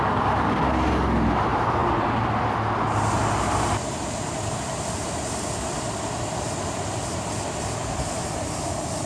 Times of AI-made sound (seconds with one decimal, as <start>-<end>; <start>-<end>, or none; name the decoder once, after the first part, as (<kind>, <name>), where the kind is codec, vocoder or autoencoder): none